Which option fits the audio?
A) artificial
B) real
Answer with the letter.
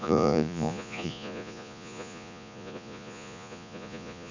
A